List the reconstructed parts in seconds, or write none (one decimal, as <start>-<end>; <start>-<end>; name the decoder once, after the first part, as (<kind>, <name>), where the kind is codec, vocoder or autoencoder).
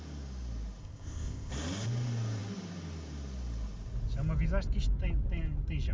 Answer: 0.8-1.5 (codec, ZipCodec)